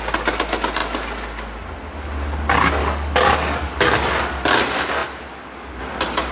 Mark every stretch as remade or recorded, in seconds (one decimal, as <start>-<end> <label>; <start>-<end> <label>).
0.0-2.8 recorded; 2.8-4.2 remade; 4.2-6.3 recorded